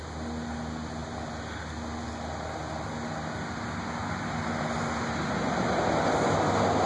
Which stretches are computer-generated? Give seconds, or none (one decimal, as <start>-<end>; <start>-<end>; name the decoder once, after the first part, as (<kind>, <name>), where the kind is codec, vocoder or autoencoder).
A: none